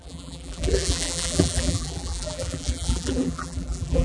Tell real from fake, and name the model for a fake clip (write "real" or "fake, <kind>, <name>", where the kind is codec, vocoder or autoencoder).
fake, vocoder, BigVGAN v2